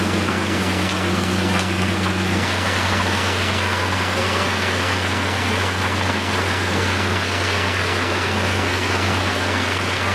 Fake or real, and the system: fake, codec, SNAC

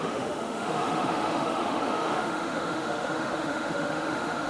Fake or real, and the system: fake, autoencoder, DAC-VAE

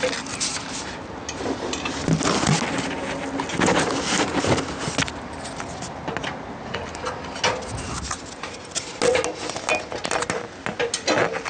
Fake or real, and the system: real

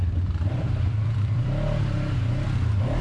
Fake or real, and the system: fake, vocoder, BigVGAN v2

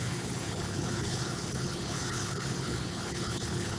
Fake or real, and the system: fake, codec, HILCodec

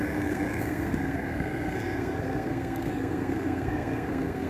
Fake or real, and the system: fake, codec, SNAC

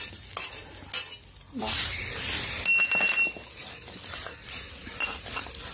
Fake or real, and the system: real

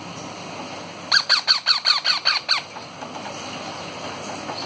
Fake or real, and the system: real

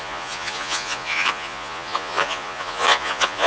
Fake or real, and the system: fake, vocoder, Vocos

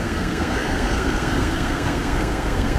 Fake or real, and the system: fake, codec, SNAC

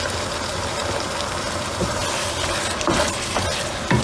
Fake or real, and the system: real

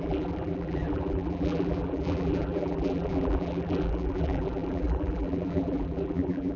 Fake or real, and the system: fake, vocoder, BigVGAN v2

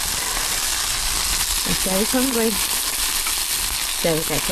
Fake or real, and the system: real